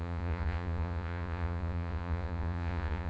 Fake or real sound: fake